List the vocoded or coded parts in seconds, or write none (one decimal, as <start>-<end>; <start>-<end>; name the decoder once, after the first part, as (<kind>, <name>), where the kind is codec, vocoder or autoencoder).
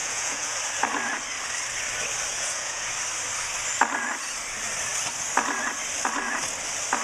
0.0-0.6 (vocoder, Vocos); 2.3-2.9